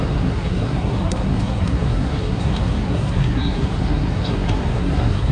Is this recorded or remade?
remade